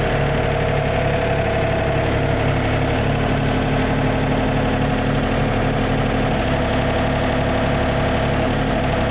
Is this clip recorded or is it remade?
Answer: recorded